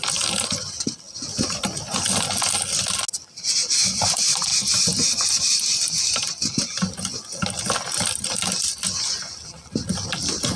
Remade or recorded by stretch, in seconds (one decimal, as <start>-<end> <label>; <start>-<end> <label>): 0.0-10.6 recorded